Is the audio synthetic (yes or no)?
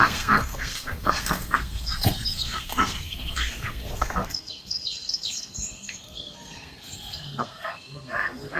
yes